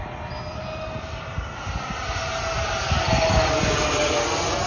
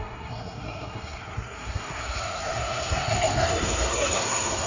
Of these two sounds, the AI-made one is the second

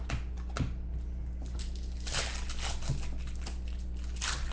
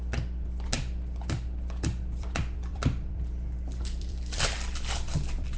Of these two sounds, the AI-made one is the second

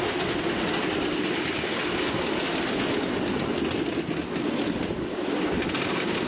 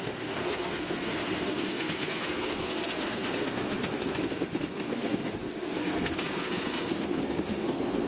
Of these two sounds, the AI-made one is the second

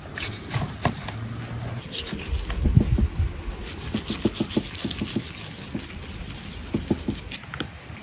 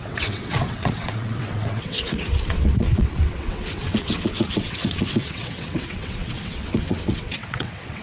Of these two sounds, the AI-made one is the second